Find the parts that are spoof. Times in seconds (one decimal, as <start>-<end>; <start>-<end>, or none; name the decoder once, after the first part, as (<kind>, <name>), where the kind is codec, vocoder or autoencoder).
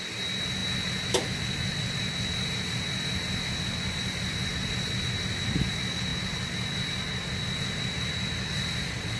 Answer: none